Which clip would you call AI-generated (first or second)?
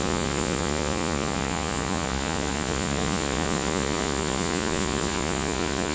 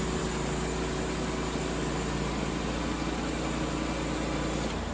first